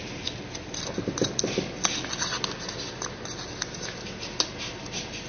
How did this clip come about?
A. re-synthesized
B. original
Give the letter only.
B